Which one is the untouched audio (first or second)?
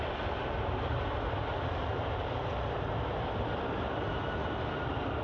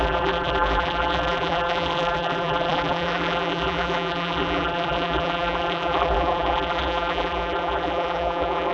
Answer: first